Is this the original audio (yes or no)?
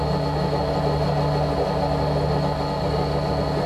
yes